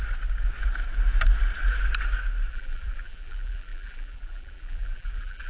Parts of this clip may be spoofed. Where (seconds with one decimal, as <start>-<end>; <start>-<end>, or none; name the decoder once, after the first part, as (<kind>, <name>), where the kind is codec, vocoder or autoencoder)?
2.5-5.5 (vocoder, BigVGAN v2)